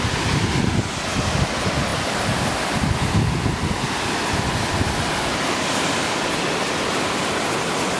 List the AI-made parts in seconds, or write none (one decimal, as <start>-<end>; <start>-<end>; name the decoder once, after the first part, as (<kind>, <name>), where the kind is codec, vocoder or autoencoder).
none